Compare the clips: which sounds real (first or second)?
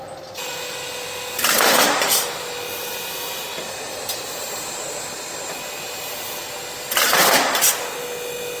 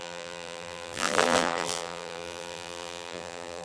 first